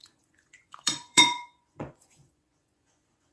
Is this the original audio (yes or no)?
no